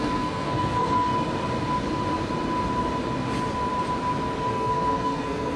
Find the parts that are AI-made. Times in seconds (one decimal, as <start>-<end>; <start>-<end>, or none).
0.0-1.1; 4.5-5.6